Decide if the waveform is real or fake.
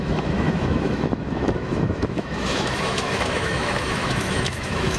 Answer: fake